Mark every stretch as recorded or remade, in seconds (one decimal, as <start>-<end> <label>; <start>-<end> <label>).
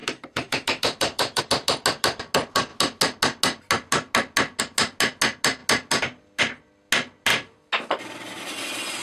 0.0-1.4 remade; 1.4-9.0 recorded